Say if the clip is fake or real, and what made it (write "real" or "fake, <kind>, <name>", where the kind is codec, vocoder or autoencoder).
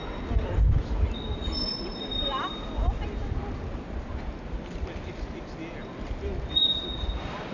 real